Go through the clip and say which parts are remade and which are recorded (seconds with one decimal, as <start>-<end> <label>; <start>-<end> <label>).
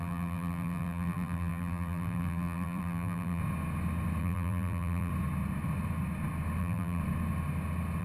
0.0-3.4 remade; 3.4-4.2 recorded; 4.2-5.1 remade; 5.1-6.6 recorded; 6.6-7.0 remade; 7.0-8.0 recorded